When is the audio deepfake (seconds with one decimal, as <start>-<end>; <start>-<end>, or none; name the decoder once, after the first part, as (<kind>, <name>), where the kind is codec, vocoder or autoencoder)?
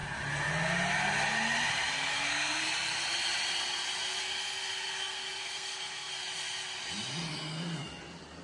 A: 2.1-2.6 (codec, SNAC); 4.2-6.1